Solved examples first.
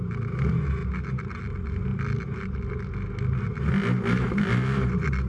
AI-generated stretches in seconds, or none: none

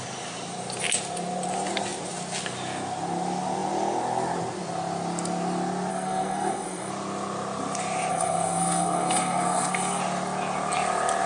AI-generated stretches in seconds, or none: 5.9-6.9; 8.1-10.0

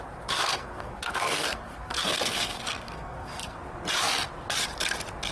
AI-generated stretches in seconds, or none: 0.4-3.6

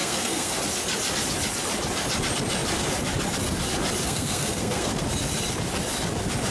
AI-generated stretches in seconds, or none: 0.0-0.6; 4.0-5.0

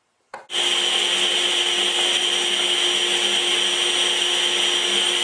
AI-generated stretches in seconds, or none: none

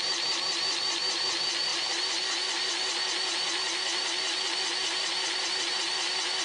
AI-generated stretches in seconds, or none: none

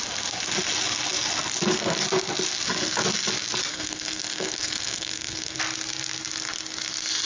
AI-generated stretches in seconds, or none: 3.7-5.6